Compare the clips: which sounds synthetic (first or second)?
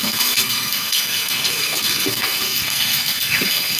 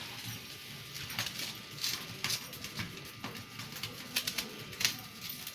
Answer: first